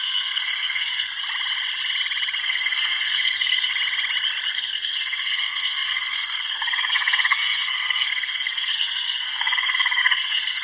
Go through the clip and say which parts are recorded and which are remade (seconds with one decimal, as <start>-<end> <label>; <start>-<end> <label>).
0.0-1.1 remade; 1.1-2.4 recorded; 2.4-3.7 remade; 3.7-4.5 recorded; 4.5-10.6 remade